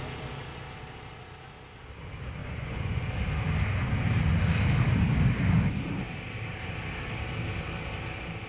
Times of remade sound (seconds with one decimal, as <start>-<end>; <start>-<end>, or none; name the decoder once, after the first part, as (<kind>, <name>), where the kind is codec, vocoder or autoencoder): 2.4-3.0 (vocoder, Vocos)